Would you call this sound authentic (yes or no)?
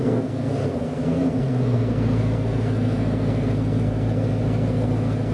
no